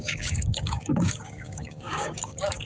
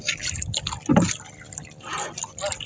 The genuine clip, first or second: second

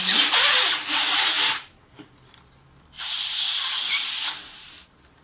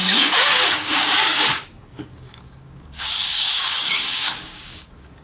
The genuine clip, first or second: first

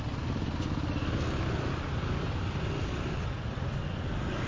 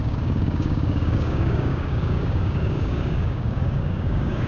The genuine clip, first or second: first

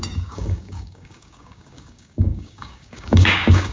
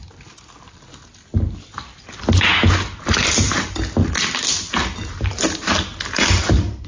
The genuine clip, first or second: second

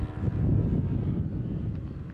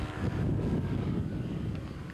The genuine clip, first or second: first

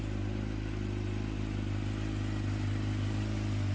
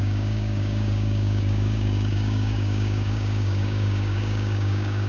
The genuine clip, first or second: first